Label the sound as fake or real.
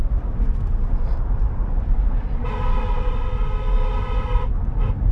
real